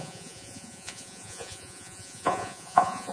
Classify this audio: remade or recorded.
remade